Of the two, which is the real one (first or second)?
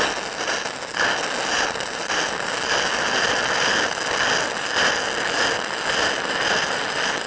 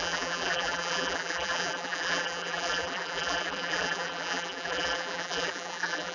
first